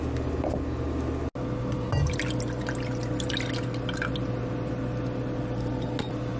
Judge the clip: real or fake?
real